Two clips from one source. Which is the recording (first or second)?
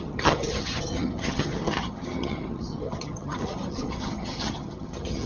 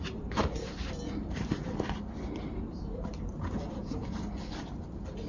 second